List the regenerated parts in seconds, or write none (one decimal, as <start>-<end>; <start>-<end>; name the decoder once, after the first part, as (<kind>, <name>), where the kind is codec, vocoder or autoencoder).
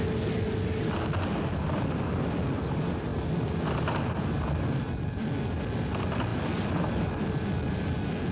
none